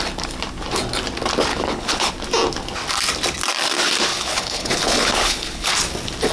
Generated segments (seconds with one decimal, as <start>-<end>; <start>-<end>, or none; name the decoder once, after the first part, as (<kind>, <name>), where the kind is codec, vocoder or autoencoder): 1.5-2.1 (codec, HILCodec); 4.1-5.7